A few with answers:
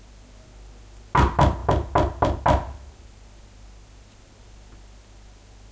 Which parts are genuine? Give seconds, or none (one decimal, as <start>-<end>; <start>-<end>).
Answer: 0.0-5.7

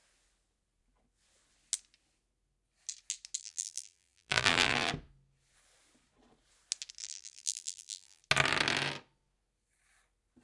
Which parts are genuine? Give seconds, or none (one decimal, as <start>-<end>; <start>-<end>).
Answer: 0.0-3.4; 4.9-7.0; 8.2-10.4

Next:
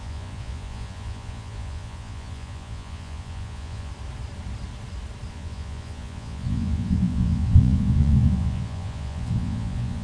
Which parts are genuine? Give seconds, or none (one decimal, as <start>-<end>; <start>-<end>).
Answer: 3.9-5.3

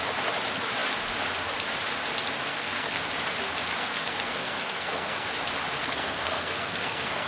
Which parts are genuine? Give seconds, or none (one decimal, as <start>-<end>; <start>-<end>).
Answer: 0.0-2.5; 3.0-3.7; 5.3-5.8